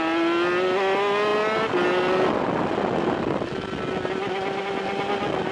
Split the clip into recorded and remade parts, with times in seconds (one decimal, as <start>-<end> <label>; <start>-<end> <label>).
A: 0.0-5.5 recorded